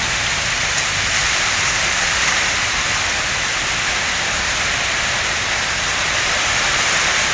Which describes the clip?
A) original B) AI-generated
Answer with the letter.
B